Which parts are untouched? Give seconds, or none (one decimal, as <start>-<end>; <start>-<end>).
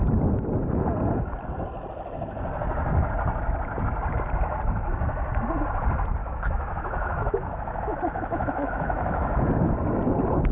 0.0-6.2; 9.5-10.5